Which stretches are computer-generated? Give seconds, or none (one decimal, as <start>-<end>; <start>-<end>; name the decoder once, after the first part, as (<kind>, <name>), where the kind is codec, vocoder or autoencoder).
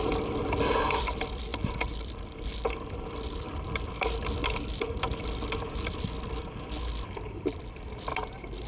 0.0-8.7 (vocoder, BigVGAN v2)